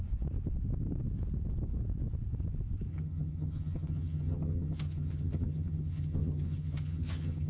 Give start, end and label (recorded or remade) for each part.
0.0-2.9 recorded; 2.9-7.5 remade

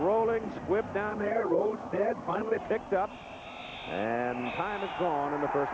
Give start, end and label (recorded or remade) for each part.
0.0-1.1 recorded; 1.1-2.6 remade; 2.6-5.7 recorded

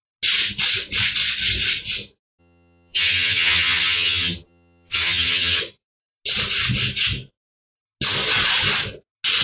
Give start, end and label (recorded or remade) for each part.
0.0-2.4 recorded; 2.4-5.6 remade; 5.6-9.4 recorded

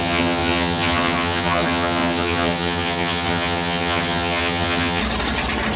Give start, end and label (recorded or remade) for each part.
0.0-5.0 remade; 5.0-5.8 recorded

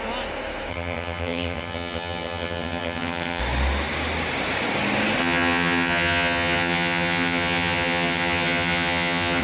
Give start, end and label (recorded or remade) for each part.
0.0-0.7 recorded; 0.7-3.4 remade; 3.4-5.2 recorded; 5.2-9.4 remade

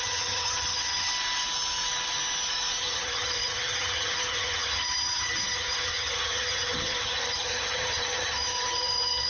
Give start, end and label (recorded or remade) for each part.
0.0-1.1 remade; 1.1-2.8 recorded; 2.8-9.3 remade

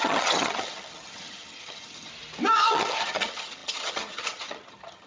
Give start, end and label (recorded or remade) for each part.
0.0-2.1 remade; 2.1-2.7 recorded; 2.7-5.1 remade

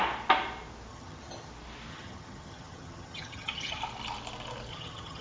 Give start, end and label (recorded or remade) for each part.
0.0-0.9 recorded; 0.9-1.5 remade; 1.5-1.9 recorded; 1.9-3.8 remade; 3.8-4.7 recorded; 4.7-5.2 remade